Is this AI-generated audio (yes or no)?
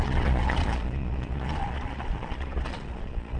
yes